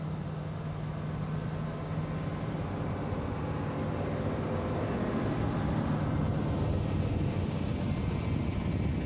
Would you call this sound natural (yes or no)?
yes